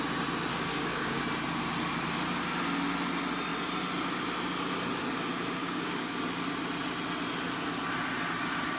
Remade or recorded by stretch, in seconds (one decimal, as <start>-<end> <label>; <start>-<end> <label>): 0.0-0.5 recorded; 0.5-1.2 remade; 1.2-5.6 recorded; 5.6-6.2 remade; 6.2-8.8 recorded